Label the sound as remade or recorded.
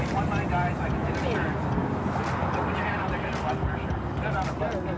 recorded